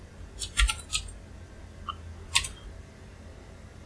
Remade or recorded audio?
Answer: recorded